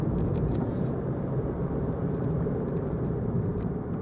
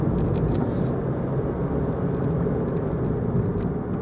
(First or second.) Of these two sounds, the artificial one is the first